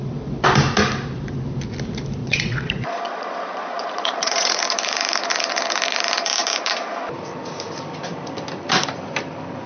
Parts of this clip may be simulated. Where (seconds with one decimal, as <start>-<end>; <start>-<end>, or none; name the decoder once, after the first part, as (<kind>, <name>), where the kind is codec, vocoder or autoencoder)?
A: 2.2-4.6 (vocoder, Vocos)